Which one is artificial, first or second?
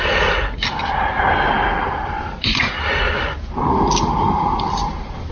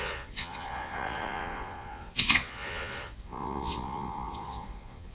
second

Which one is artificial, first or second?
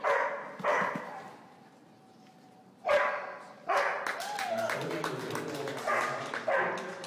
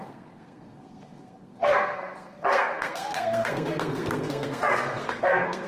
second